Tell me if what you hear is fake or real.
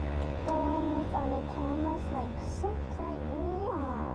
fake